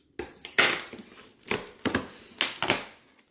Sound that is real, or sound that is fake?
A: real